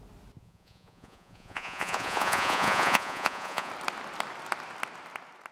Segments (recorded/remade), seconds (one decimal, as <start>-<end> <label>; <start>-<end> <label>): 0.0-0.4 recorded; 0.4-3.7 remade; 3.7-5.5 recorded